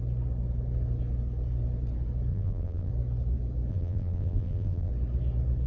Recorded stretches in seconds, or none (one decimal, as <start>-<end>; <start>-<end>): 0.0-2.3; 2.9-3.7; 4.9-5.7

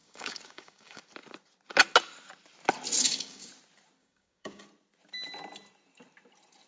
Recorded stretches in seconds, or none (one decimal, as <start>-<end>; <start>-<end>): 1.0-3.0; 3.5-4.0; 4.6-6.7

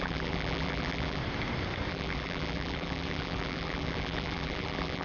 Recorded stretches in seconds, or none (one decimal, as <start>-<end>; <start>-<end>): 1.2-1.9